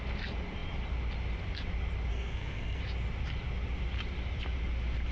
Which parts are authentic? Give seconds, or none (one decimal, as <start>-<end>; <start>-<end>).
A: 0.0-2.1; 2.8-5.1

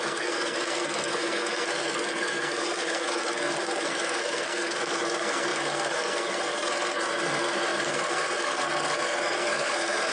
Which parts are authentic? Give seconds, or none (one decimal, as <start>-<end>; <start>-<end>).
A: none

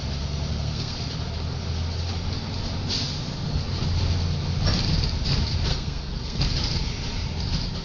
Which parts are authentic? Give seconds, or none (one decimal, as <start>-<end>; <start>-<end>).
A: 0.0-0.5; 1.0-5.7; 6.4-7.8

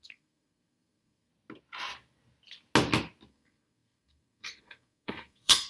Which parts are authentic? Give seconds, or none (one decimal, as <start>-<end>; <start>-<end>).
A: 1.3-3.3

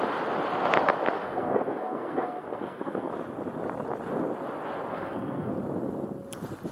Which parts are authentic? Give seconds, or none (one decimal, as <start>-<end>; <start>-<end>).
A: 0.0-1.2; 3.1-4.9; 5.5-6.7